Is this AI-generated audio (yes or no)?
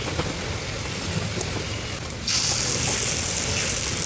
no